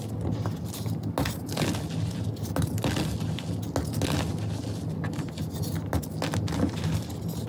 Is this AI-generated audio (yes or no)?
no